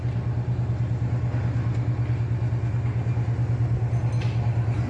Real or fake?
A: real